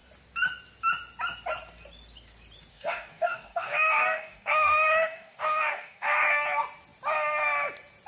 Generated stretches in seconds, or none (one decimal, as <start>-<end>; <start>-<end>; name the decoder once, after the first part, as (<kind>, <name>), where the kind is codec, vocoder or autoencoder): 2.7-6.3 (codec, DAC)